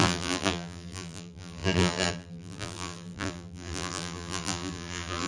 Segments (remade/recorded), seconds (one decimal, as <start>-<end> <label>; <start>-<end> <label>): 0.0-5.3 remade

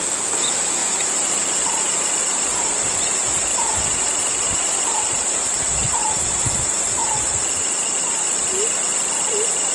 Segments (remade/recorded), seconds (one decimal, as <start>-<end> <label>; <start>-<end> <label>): 0.0-3.5 recorded; 3.5-5.7 remade; 5.7-9.7 recorded

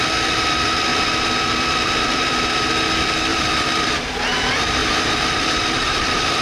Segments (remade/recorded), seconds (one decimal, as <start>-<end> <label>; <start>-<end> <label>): 0.0-0.9 recorded; 0.9-2.7 remade; 2.7-3.3 recorded; 3.3-4.1 remade; 4.1-4.8 recorded; 4.8-6.4 remade

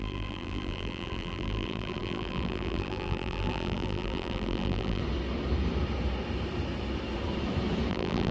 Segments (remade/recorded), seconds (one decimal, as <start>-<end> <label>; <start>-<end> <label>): 0.0-5.0 remade; 5.0-7.9 recorded; 7.9-8.3 remade

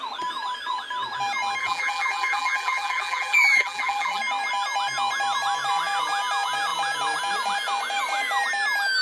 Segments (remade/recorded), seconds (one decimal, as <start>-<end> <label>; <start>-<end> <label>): 0.0-1.6 recorded; 1.6-4.2 remade; 4.2-9.0 recorded

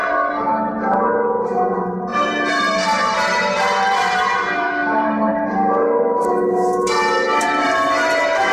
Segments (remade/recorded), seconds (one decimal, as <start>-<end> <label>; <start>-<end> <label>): 0.0-6.2 remade; 6.2-7.4 recorded; 7.4-8.5 remade